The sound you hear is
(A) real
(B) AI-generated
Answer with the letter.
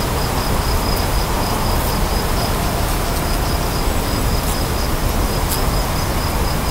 A